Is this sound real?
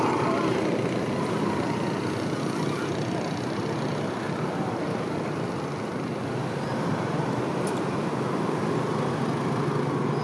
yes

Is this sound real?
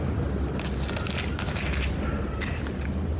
yes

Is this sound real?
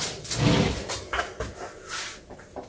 yes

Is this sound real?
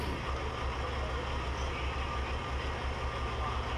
yes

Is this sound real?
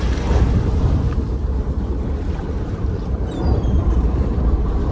no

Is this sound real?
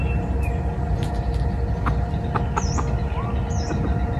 yes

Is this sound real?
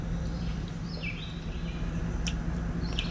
yes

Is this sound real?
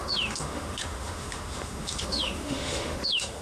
no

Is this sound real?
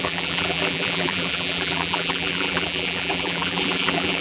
no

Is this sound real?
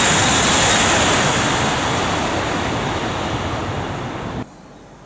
yes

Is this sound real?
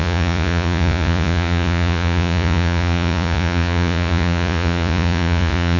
no